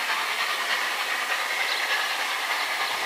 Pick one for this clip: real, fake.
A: real